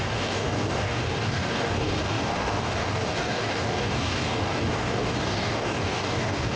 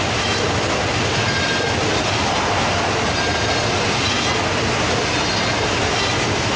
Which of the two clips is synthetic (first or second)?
first